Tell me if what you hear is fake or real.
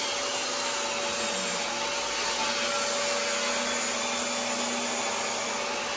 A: real